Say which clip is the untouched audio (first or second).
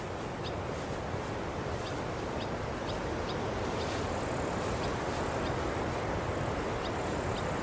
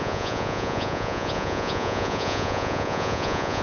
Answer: first